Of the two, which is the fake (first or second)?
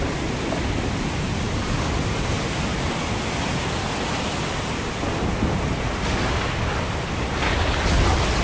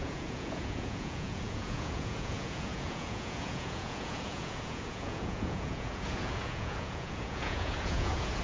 second